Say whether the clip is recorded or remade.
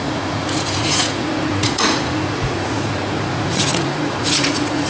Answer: remade